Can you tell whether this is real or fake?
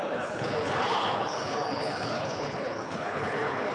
fake